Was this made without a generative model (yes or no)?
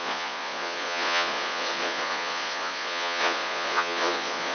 no